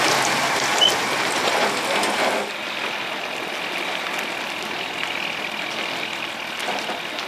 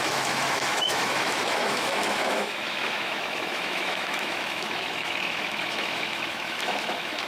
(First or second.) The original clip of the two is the first